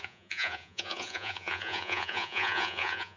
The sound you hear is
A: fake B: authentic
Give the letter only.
A